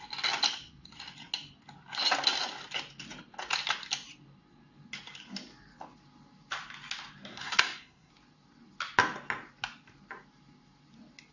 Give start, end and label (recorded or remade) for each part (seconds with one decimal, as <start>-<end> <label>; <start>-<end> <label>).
0.0-7.3 recorded; 7.3-8.1 remade; 8.1-11.3 recorded

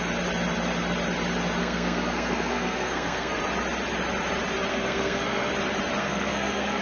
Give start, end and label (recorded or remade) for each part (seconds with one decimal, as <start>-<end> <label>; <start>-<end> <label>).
0.0-1.6 recorded; 1.6-3.4 remade; 3.4-4.7 recorded; 4.7-5.5 remade; 5.5-6.0 recorded; 6.0-6.8 remade

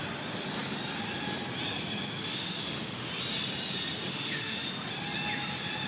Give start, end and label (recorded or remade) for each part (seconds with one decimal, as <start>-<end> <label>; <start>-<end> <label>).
0.0-2.2 recorded; 2.2-3.1 remade; 3.1-4.1 recorded; 4.1-4.7 remade; 4.7-5.9 recorded

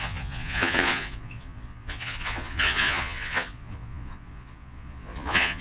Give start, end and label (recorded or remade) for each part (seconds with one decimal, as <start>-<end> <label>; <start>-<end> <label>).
0.0-5.6 remade

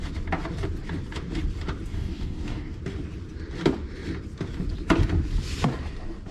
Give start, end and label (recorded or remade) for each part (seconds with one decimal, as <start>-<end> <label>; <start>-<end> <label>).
0.0-1.9 recorded; 1.9-2.8 remade; 2.8-6.3 recorded